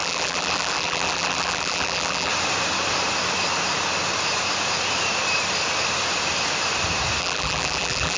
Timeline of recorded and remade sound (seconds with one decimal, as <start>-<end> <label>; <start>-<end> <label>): 0.0-2.3 remade; 2.3-7.2 recorded; 7.2-8.2 remade